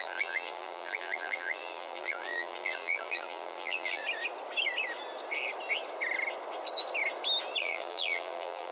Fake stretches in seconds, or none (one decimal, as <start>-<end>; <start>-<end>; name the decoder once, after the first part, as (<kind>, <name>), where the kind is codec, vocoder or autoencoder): 0.0-4.0 (vocoder, BigVGAN v2); 7.6-8.7